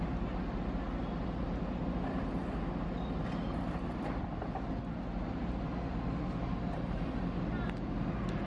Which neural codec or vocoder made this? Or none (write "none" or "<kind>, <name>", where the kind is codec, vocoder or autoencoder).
none